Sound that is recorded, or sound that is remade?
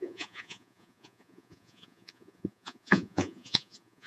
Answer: remade